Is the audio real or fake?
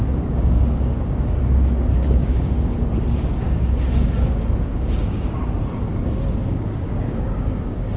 fake